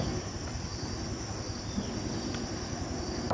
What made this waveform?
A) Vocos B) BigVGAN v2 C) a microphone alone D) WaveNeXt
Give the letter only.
C